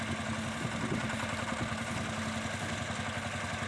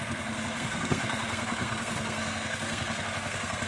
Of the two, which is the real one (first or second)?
first